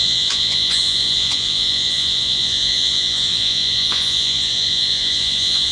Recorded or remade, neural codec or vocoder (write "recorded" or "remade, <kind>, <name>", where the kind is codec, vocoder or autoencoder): remade, vocoder, Vocos